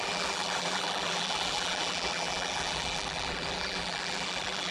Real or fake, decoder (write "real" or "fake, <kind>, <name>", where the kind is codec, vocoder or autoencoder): fake, vocoder, BigVGAN v2